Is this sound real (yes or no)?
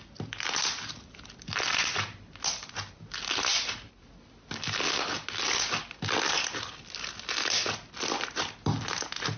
yes